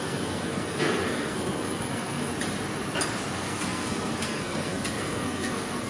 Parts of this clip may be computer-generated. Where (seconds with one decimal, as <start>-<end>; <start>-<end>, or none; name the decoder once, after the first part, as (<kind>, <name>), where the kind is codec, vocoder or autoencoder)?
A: 0.0-2.3 (codec, SNAC); 3.3-5.9